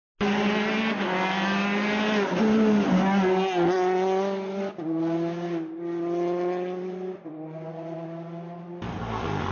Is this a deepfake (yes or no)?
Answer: no